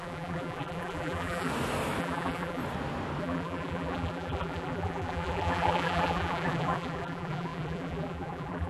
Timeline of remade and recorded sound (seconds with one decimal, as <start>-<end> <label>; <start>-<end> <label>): 0.0-1.5 remade; 1.5-2.0 recorded; 2.0-2.6 remade; 2.6-3.2 recorded; 3.2-8.7 remade